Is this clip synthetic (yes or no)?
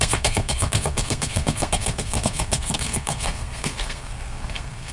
yes